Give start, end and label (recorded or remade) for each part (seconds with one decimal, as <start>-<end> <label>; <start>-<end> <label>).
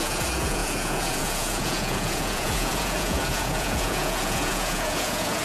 0.0-5.4 remade